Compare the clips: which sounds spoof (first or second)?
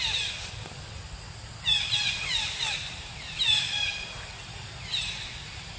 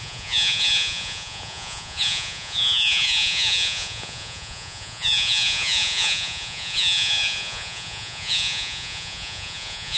second